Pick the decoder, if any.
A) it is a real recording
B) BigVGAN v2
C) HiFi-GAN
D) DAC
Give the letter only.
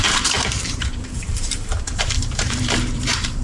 B